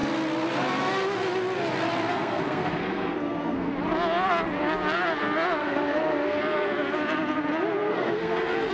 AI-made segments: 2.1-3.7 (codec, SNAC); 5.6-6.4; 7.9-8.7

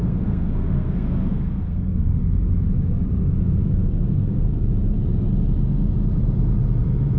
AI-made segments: 0.0-2.5 (codec, SNAC); 4.1-4.7

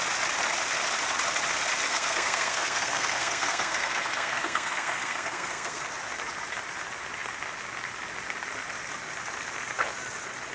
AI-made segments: 1.9-5.8 (codec, SNAC)

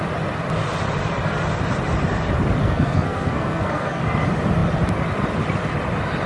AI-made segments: 2.6-4.0 (codec, SNAC)